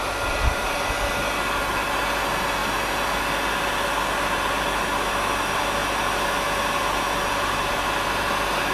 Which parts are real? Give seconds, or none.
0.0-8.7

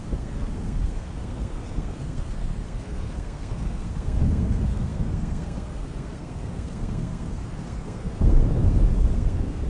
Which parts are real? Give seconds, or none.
none

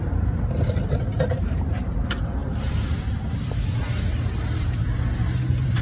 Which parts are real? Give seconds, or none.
none

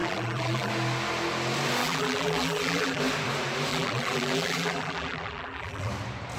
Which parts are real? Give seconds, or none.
0.7-1.8; 3.0-3.7; 5.9-6.4

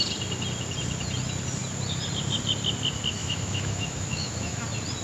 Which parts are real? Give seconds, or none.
0.0-3.2; 4.6-5.0

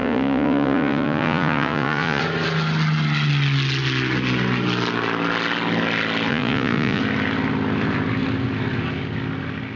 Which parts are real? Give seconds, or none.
2.2-6.3; 7.0-9.8